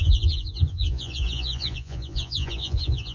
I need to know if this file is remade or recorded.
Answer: remade